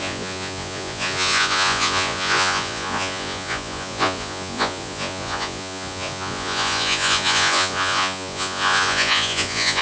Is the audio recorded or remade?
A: remade